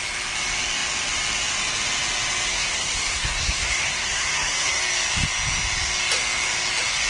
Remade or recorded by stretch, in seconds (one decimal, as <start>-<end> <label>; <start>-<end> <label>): 0.0-2.5 recorded; 2.5-4.8 remade; 4.8-7.1 recorded